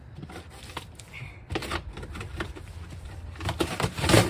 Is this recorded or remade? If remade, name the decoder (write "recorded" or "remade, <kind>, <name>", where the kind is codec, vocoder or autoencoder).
remade, vocoder, BigVGAN v2